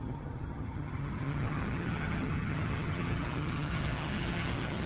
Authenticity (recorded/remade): remade